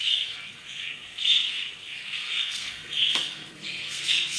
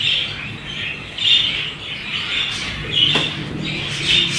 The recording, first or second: second